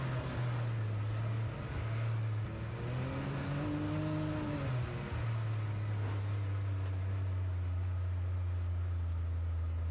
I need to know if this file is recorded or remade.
recorded